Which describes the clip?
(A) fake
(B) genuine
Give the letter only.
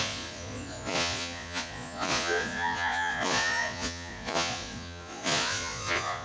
A